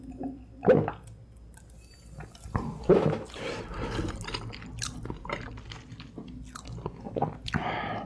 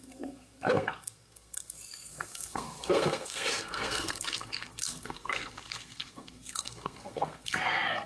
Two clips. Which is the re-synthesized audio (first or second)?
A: second